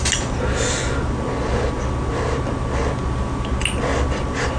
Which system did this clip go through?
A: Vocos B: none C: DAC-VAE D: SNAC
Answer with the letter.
B